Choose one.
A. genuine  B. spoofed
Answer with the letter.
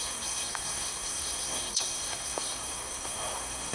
B